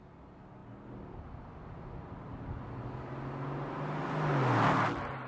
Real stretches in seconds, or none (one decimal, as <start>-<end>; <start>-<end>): 0.0-5.3